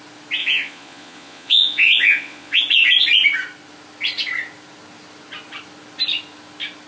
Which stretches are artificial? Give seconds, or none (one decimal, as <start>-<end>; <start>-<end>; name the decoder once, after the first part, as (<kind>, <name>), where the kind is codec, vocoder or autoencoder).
0.4-2.6 (vocoder, Vocos)